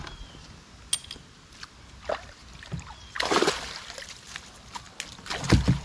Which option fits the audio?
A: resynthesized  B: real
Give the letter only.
B